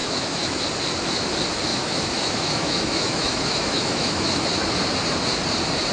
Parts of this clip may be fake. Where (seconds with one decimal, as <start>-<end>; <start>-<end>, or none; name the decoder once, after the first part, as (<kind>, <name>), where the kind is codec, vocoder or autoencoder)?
0.0-0.6 (autoencoder, DAC-VAE); 1.7-4.4